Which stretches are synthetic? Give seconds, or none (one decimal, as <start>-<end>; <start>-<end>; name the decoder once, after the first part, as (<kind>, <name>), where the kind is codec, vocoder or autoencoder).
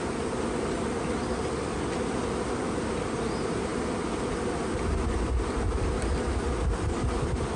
none